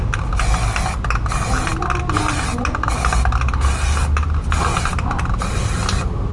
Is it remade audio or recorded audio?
recorded